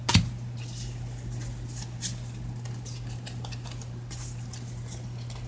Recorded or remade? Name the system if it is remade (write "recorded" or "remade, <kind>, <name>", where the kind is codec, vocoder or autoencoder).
recorded